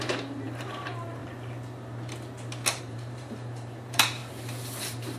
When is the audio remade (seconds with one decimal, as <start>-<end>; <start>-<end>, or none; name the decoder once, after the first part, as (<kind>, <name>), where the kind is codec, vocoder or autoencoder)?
0.0-1.2 (vocoder, BigVGAN v2); 2.8-4.2; 4.8-5.2